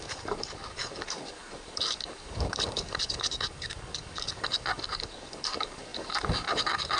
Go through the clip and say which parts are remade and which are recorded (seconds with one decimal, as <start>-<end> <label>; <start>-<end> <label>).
0.0-7.0 remade